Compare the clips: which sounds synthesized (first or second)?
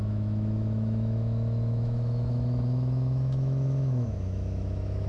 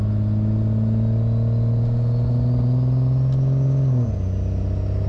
first